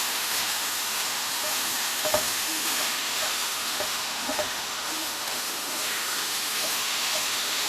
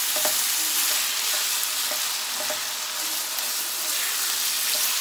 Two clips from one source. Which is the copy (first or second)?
first